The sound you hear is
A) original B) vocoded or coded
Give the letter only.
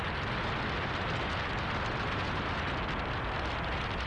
A